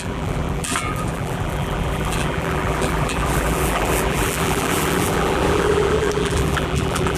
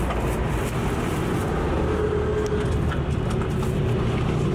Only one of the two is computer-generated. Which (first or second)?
first